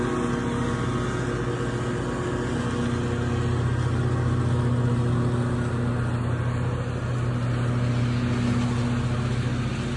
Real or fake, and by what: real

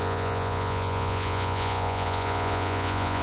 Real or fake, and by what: fake, vocoder, Vocos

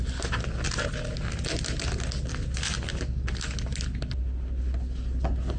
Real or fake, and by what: real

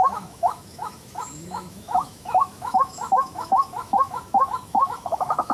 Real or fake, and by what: fake, autoencoder, DAC-VAE